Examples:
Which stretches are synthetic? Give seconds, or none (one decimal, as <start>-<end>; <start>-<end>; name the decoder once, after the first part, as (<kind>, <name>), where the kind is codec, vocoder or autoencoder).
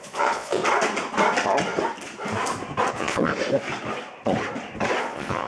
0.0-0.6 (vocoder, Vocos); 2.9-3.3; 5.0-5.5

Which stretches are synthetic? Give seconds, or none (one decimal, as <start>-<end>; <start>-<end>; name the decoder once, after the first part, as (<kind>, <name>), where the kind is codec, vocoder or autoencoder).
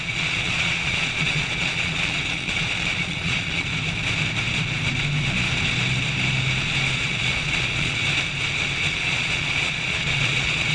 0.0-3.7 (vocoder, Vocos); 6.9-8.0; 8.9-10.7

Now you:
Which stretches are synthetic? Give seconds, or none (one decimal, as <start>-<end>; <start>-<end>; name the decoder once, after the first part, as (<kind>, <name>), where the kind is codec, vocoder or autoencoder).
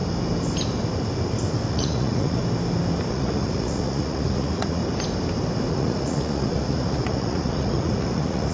1.7-2.4 (vocoder, Vocos); 3.1-4.8; 5.7-8.5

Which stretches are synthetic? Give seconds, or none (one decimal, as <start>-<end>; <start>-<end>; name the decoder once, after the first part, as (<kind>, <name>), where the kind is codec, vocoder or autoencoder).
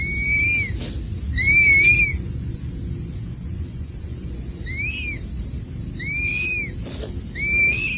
2.1-2.7 (vocoder, Vocos); 3.3-4.6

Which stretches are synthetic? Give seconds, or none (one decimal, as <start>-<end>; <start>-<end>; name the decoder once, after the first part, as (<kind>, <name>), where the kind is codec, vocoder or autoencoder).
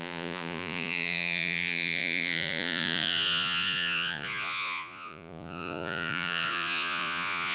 0.0-7.5 (vocoder, Vocos)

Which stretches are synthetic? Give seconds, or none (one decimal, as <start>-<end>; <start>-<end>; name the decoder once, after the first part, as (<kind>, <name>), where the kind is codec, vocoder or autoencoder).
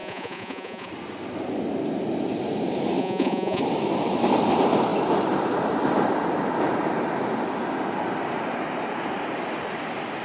0.0-0.9 (vocoder, Vocos); 3.0-3.6